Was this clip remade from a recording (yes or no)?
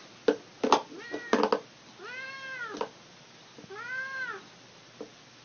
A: no